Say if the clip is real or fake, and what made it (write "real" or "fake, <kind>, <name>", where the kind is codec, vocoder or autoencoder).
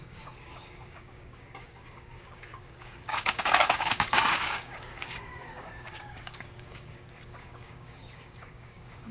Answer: fake, codec, DAC